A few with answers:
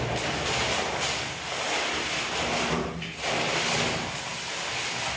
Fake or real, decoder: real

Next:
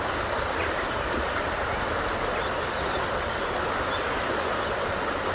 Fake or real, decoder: real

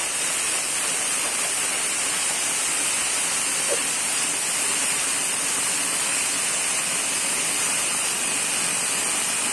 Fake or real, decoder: real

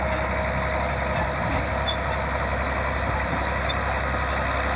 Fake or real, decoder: real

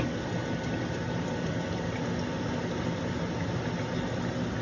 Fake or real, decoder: real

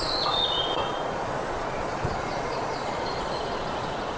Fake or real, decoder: fake, vocoder, Vocos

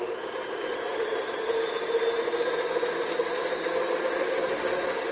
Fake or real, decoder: real